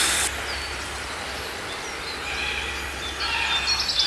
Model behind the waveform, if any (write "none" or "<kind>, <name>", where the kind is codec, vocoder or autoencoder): none